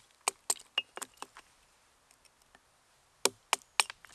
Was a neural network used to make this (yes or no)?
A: no